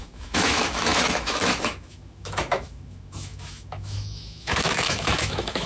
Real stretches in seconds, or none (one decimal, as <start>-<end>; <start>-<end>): none